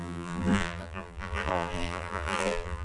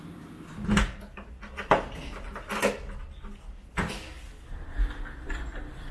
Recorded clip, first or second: second